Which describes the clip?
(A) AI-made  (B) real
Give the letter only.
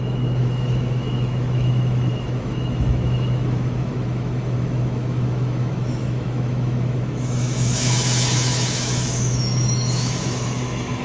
A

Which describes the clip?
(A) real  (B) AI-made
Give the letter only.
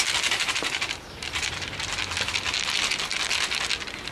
A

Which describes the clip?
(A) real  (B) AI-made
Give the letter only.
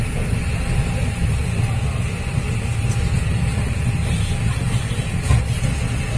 A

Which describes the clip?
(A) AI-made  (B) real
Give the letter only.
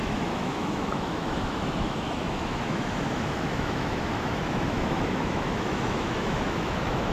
A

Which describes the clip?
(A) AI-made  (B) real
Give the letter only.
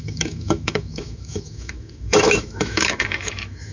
A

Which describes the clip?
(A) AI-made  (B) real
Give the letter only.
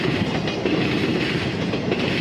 B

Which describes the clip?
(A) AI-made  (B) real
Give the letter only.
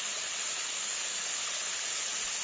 B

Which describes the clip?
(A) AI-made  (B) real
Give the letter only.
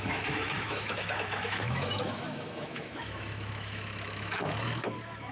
A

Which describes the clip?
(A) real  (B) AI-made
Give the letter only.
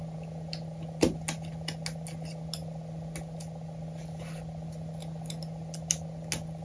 A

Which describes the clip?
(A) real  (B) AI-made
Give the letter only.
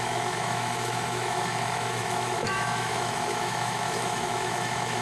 B